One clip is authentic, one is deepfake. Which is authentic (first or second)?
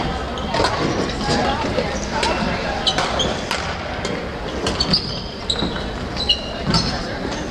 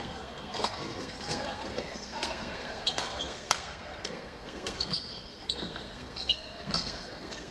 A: first